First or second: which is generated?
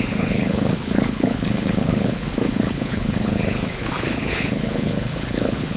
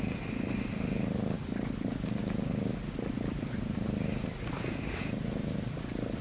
first